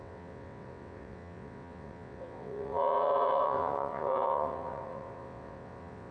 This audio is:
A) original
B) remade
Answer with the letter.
B